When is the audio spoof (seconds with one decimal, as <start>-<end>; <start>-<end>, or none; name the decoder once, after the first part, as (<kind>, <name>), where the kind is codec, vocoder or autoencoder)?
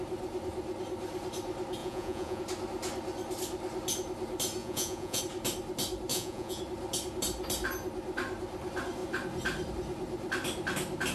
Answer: 1.8-2.4 (vocoder, Vocos); 4.6-5.2; 6.1-6.6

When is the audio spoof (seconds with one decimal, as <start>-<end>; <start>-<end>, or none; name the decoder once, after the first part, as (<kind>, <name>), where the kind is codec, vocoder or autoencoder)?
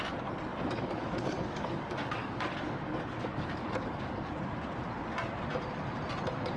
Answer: 0.5-4.3 (codec, DAC)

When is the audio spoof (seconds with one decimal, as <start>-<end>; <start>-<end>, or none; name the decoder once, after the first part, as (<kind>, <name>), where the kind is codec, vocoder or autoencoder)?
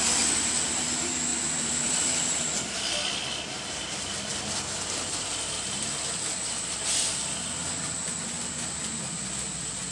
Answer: none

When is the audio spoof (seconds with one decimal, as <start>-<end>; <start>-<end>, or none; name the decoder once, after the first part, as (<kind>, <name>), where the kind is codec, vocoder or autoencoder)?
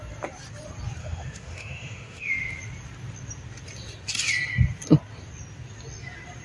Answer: 1.0-2.4 (autoencoder, DAC-VAE)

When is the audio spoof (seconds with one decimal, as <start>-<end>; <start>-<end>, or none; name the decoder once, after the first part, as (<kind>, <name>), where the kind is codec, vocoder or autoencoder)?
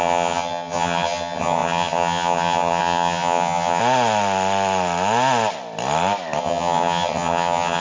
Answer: 0.0-3.8 (vocoder, HiFi-GAN); 6.4-7.8